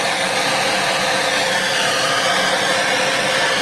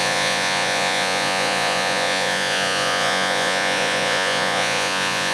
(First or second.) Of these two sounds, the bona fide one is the first